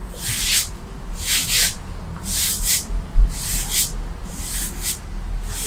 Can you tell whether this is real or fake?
real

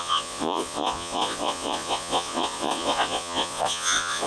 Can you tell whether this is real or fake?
fake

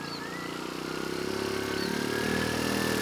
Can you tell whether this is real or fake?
real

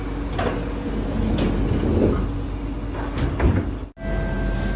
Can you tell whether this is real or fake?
real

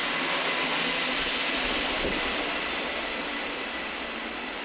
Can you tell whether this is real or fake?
fake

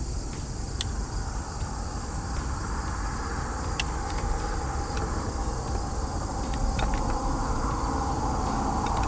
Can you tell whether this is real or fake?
real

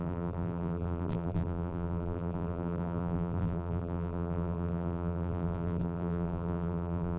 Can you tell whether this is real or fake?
fake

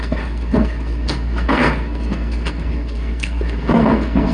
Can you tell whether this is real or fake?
fake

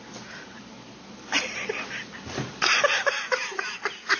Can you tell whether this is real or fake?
real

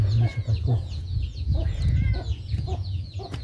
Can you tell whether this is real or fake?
fake